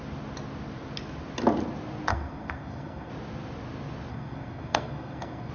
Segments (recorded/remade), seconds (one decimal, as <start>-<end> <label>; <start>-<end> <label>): 0.0-2.1 recorded; 2.1-3.1 remade; 3.1-4.1 recorded; 4.1-5.5 remade